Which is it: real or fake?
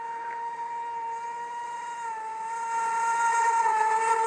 real